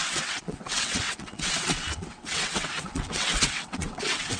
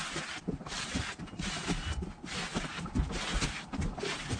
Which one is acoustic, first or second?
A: second